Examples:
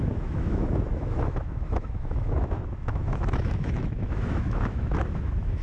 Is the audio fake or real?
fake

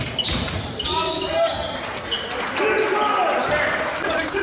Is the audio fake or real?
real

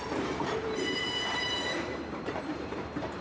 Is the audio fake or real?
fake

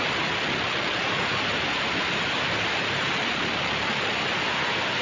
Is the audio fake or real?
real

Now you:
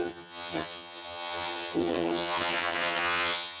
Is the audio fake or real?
fake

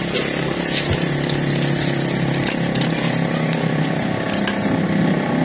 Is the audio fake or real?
real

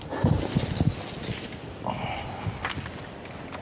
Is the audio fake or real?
real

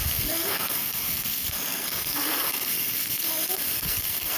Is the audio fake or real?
fake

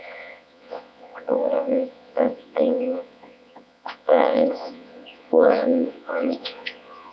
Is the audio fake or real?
fake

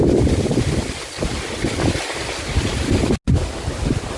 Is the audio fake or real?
real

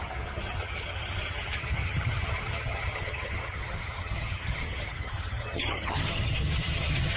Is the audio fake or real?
fake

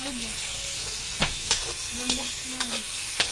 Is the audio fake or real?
fake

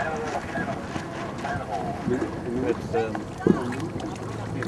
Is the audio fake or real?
real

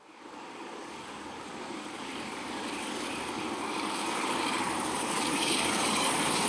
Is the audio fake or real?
fake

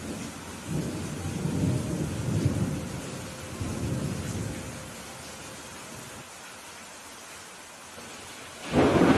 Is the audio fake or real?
real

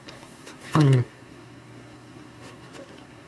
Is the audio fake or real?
fake